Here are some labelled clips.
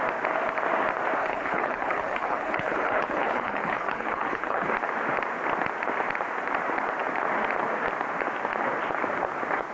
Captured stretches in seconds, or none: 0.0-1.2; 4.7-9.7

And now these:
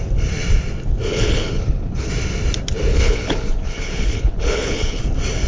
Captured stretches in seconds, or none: 0.0-1.1; 2.1-2.9; 5.0-5.5

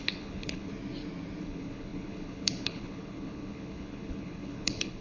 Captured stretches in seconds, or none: 0.7-1.4

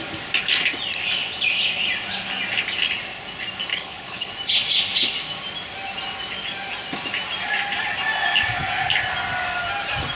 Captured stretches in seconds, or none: 0.0-3.7; 4.3-10.1

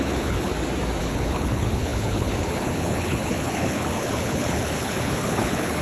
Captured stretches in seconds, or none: 0.5-1.0

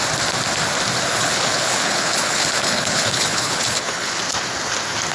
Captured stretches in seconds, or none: 0.0-1.1; 4.2-5.1

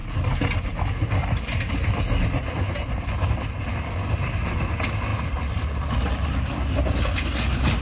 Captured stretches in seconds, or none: 0.0-7.8

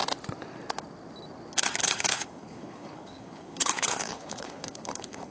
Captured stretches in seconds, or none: 0.0-1.8